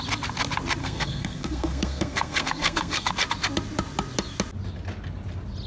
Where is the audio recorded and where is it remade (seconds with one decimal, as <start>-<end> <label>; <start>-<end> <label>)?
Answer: 0.0-0.8 recorded; 0.8-3.1 remade; 3.1-5.7 recorded